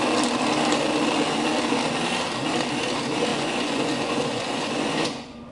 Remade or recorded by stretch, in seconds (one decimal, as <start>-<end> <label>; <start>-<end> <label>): 0.0-3.3 recorded; 3.3-5.5 remade